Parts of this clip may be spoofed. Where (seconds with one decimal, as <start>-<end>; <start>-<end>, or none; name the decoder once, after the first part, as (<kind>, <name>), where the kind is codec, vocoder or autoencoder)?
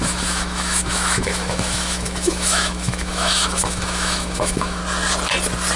0.0-4.8 (autoencoder, DAC-VAE)